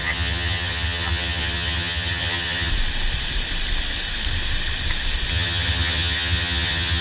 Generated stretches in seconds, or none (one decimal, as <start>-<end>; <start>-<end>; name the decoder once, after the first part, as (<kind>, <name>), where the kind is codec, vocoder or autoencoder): 0.0-2.7 (vocoder, HiFi-GAN); 5.3-7.0